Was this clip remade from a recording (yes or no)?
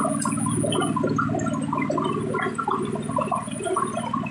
no